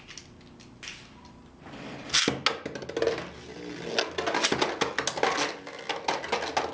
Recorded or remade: recorded